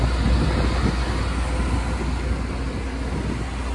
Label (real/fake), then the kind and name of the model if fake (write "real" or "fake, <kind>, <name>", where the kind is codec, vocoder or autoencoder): real